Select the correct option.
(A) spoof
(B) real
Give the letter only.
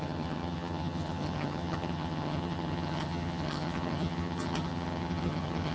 A